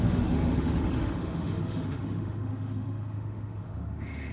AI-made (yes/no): yes